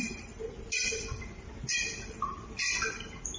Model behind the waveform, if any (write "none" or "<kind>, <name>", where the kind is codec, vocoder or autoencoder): none